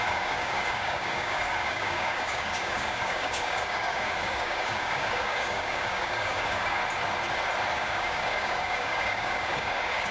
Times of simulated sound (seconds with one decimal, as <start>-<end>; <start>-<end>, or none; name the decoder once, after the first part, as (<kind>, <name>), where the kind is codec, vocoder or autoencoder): 0.0-6.8 (codec, DAC); 7.7-10.1